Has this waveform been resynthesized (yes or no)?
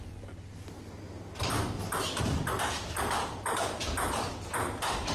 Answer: no